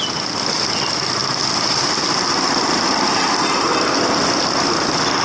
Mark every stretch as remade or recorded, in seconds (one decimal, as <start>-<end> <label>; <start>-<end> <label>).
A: 0.0-5.2 recorded